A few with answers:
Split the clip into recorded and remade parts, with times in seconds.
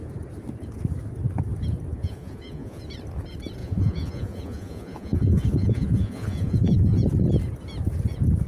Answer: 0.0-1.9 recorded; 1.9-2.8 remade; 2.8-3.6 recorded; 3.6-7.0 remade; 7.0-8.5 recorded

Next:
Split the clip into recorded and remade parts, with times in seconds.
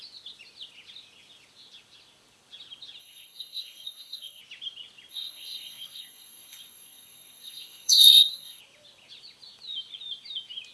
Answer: 0.0-3.0 recorded; 3.0-4.4 remade; 4.4-5.1 recorded; 5.1-8.6 remade; 8.6-10.7 recorded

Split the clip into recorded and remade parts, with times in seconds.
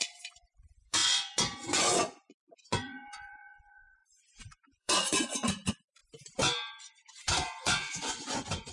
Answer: 0.0-6.0 remade; 6.0-6.8 recorded; 6.8-8.7 remade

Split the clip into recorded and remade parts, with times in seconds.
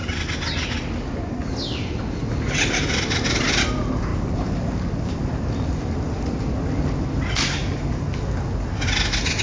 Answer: 0.0-9.4 recorded